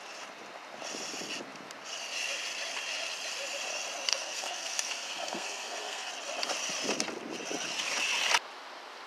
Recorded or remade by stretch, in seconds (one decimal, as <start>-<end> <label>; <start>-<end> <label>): 0.0-4.1 recorded; 4.1-6.1 remade; 6.1-9.1 recorded

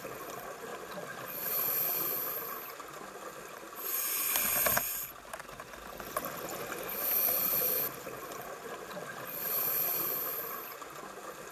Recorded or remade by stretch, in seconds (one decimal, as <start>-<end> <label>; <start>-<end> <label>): 0.0-11.5 recorded